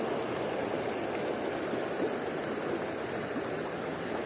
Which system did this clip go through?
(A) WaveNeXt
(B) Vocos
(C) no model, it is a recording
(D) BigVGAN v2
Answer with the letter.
C